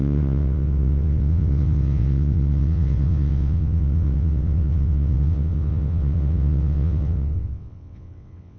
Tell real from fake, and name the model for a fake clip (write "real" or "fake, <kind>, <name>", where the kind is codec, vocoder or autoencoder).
fake, vocoder, WaveNeXt